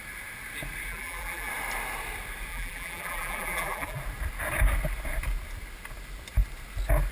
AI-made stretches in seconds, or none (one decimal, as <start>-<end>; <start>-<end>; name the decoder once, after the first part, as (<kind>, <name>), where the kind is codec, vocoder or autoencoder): 0.9-1.5 (vocoder, BigVGAN v2); 2.5-4.0

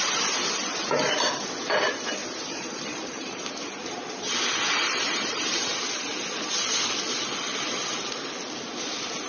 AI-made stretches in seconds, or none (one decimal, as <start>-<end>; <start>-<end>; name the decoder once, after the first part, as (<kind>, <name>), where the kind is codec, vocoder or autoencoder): 2.2-5.9 (vocoder, BigVGAN v2)

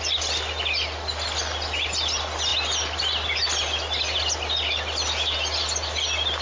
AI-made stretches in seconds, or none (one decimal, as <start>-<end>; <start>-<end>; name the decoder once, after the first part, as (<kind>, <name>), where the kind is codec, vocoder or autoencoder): none

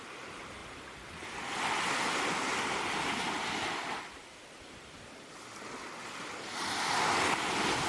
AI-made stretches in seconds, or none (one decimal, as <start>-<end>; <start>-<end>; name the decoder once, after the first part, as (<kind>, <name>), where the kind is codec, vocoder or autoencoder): 4.2-5.3 (vocoder, BigVGAN v2)